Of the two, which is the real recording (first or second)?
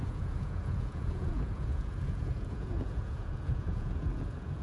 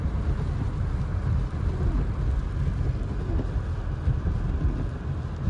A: second